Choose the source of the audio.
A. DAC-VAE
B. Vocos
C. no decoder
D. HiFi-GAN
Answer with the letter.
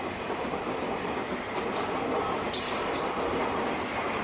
C